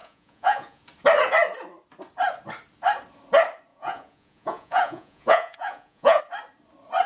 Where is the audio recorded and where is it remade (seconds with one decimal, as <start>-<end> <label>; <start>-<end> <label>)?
0.0-0.8 remade; 0.8-3.7 recorded; 3.7-6.2 remade; 6.2-7.1 recorded